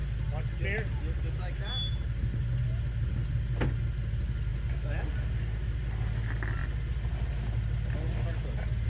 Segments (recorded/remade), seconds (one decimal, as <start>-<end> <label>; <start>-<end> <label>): 0.0-8.9 recorded